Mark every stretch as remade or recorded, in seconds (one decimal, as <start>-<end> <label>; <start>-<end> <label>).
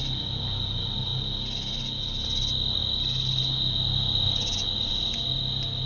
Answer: 0.0-5.9 recorded